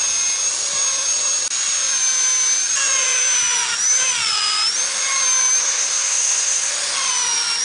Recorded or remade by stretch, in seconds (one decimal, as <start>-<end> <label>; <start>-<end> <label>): 0.0-5.6 recorded; 5.6-6.7 remade; 6.7-7.6 recorded